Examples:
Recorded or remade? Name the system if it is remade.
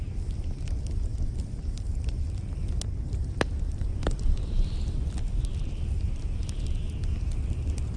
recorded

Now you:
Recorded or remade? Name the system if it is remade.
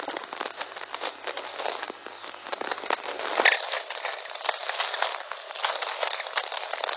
recorded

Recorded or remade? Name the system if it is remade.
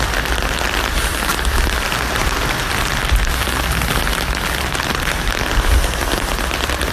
remade, vocoder, BigVGAN v2